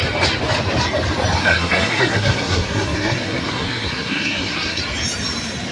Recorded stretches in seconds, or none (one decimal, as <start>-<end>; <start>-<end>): 0.0-1.4; 4.8-5.7